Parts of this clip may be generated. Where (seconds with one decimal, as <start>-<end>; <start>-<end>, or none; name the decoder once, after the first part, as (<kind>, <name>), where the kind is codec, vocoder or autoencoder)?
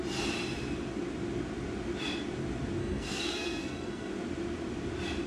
2.8-4.1 (codec, SNAC)